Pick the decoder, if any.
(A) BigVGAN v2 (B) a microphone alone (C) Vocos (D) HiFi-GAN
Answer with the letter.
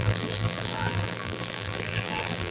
A